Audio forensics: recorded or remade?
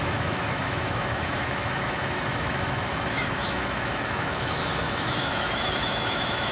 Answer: remade